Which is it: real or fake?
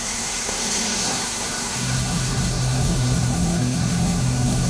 fake